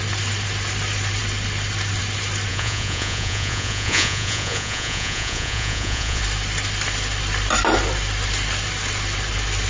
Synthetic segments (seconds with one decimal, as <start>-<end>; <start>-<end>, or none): 2.5-6.2